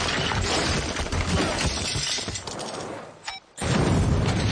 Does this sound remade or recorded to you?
recorded